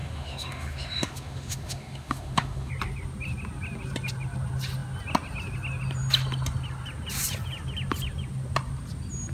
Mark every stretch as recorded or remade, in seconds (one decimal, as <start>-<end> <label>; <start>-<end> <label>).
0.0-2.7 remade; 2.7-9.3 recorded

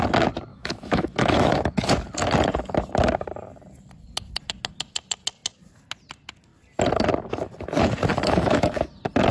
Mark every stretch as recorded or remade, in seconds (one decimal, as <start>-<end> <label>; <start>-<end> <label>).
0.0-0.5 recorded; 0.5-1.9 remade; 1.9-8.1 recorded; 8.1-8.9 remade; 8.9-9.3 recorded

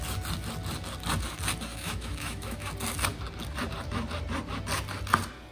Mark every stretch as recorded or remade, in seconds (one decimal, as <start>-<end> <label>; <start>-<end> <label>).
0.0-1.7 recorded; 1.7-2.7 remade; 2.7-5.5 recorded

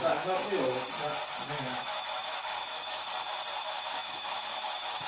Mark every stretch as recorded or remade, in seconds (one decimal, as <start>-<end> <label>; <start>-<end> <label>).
0.0-0.4 remade; 0.4-1.5 recorded; 1.5-3.1 remade; 3.1-3.6 recorded; 3.6-5.1 remade

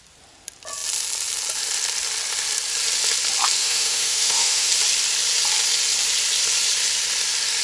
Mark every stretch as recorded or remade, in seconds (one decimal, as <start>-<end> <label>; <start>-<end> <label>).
0.0-3.6 recorded; 3.6-4.7 remade; 4.7-7.6 recorded

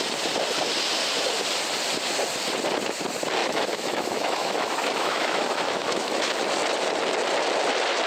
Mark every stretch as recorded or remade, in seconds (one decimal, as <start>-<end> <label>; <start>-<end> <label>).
0.0-3.4 recorded; 3.4-6.3 remade; 6.3-8.1 recorded